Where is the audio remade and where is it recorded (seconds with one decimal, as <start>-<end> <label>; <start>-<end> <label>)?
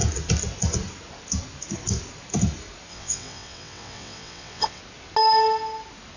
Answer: 0.0-2.9 recorded; 2.9-4.8 remade; 4.8-6.2 recorded